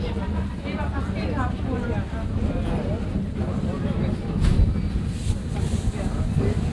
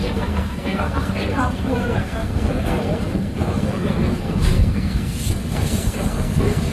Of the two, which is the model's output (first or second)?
second